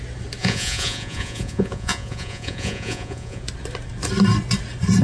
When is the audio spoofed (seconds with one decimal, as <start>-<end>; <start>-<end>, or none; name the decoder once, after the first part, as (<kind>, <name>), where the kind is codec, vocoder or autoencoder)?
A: 0.4-3.4 (vocoder, Vocos)